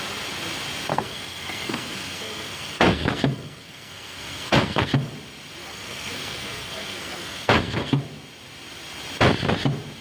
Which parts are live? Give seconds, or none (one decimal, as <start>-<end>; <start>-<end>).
0.0-0.9; 5.1-5.6; 8.0-10.0